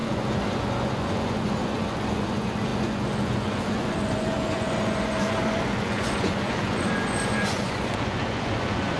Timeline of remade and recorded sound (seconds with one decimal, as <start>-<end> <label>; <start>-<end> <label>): 0.0-9.0 remade